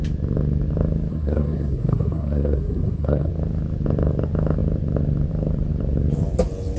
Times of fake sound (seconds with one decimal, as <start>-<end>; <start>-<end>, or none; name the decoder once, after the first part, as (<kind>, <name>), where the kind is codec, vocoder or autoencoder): 1.1-3.3 (codec, SNAC)